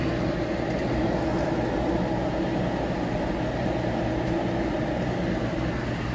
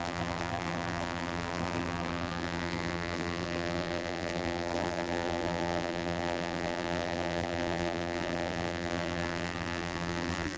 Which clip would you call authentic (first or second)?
first